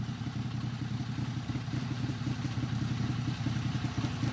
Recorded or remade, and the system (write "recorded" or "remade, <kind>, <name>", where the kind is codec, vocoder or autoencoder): recorded